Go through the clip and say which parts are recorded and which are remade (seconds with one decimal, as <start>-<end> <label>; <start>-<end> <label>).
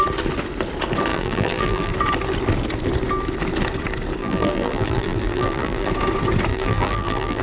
0.0-1.1 recorded; 1.1-1.9 remade; 1.9-4.2 recorded; 4.2-5.9 remade; 5.9-6.5 recorded; 6.5-7.4 remade